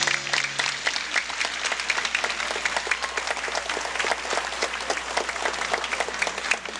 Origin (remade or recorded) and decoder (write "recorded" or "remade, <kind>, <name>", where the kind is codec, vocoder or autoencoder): recorded